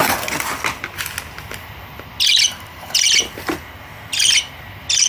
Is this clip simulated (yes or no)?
no